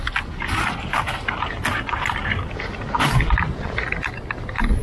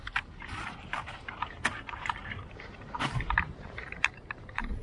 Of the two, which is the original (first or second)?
first